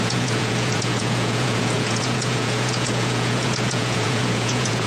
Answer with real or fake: fake